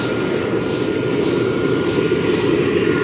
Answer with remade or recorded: recorded